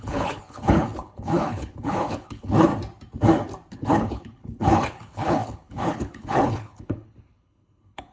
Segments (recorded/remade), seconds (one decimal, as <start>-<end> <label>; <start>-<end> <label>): 0.0-2.7 remade; 2.7-3.7 recorded; 3.7-8.1 remade